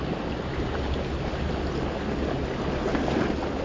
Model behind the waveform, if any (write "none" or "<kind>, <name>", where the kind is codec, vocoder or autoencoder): none